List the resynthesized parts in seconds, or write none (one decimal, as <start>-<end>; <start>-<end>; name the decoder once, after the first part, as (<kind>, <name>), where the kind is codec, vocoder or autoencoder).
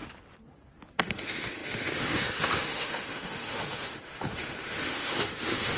1.0-5.8 (autoencoder, DAC-VAE)